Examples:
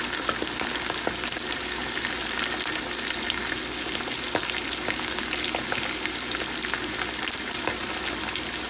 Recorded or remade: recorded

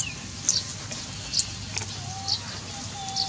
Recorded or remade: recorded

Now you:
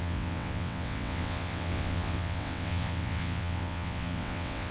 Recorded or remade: remade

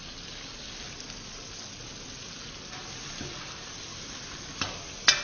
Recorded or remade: recorded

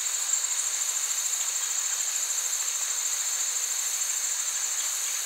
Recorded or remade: recorded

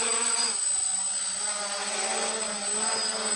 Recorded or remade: recorded